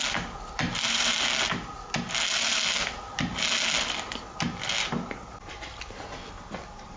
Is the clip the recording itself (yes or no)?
yes